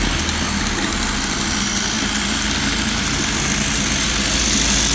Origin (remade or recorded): recorded